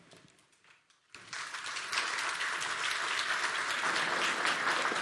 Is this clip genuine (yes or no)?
yes